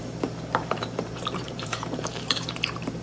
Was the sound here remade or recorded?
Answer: remade